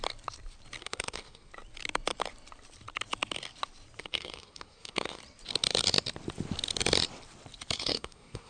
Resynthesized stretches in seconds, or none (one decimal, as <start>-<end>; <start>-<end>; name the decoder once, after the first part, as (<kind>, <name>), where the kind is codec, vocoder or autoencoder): 0.8-1.5 (codec, SNAC); 4.0-5.2; 7.8-8.5